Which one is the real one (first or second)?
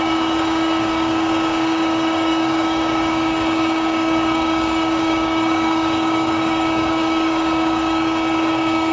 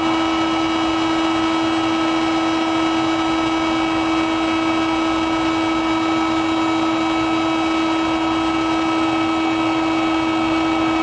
second